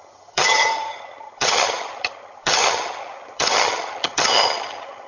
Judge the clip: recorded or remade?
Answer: remade